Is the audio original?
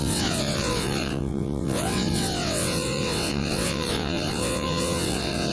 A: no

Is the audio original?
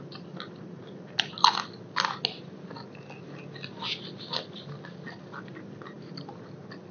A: yes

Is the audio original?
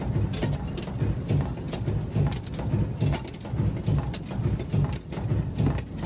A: yes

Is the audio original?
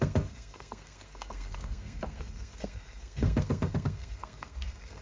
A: no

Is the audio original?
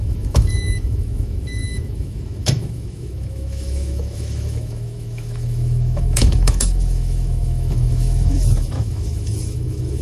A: no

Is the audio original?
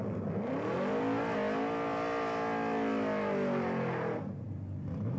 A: yes